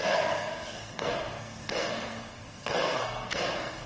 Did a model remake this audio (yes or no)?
yes